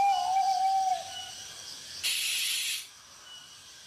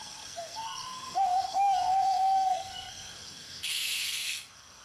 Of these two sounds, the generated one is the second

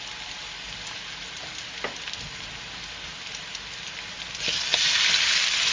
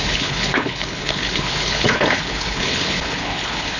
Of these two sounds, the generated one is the second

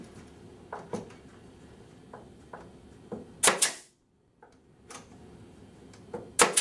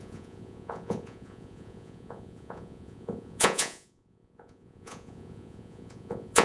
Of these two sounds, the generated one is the second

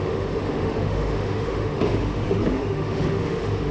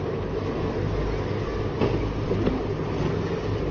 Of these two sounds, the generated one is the first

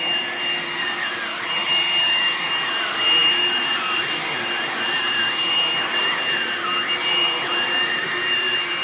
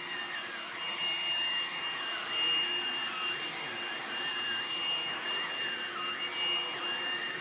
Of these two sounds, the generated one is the first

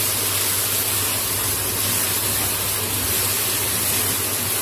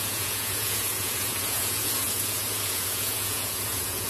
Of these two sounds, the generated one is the second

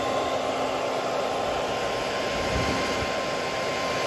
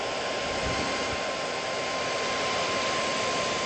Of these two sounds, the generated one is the second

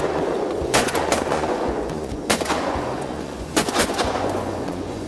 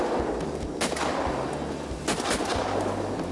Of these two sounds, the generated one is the first